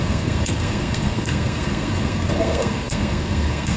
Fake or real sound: fake